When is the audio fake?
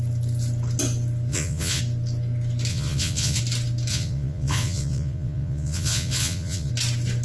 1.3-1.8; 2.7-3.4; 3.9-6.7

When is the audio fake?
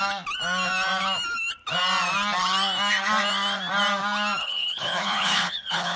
4.4-6.0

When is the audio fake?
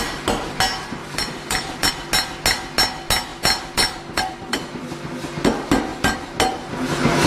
1.0-1.9; 3.3-4.9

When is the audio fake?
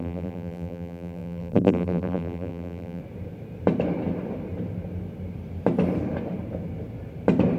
0.0-3.0